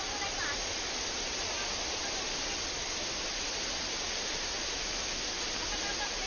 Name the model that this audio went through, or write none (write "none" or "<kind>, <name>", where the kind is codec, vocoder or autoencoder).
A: vocoder, BigVGAN v2